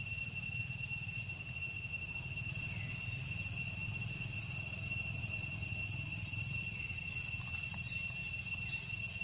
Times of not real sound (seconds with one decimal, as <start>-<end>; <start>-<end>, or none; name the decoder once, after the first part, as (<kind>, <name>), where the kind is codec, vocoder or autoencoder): 5.8-6.6 (vocoder, BigVGAN v2)